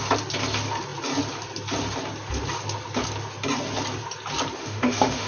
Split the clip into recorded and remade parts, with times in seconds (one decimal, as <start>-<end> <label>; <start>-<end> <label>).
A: 0.0-4.6 recorded; 4.6-5.3 remade